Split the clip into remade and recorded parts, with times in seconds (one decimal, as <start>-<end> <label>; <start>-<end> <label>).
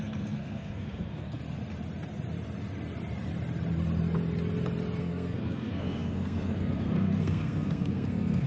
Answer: 0.0-1.4 remade; 1.4-5.0 recorded; 5.0-8.5 remade